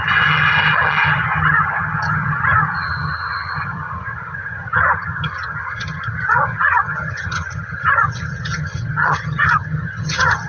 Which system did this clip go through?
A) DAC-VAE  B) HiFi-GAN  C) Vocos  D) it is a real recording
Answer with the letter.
B